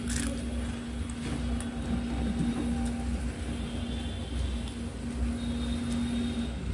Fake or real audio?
real